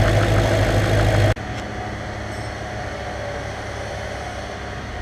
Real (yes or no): yes